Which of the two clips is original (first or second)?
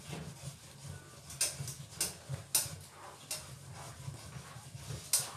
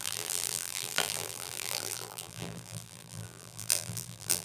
first